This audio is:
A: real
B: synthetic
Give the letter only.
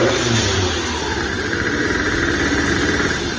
B